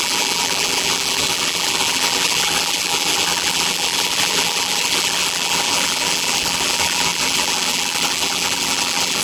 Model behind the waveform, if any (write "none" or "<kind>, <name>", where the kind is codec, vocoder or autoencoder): vocoder, BigVGAN v2